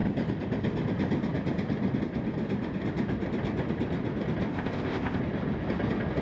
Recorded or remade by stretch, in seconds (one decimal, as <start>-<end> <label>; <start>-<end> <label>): 0.0-4.5 recorded; 4.5-5.2 remade; 5.2-6.2 recorded